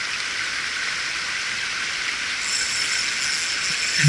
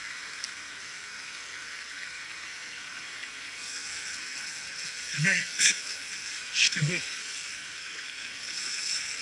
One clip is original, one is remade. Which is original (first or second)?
first